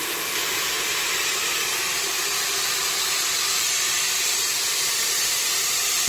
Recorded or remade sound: remade